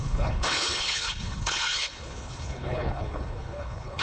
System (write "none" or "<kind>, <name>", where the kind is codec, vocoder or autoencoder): codec, HILCodec